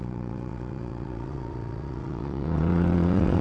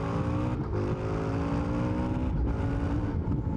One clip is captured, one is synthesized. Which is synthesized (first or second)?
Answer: first